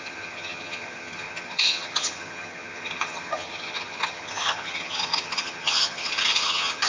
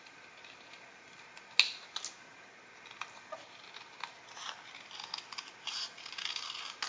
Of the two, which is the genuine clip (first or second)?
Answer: second